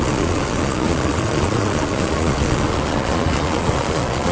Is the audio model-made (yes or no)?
yes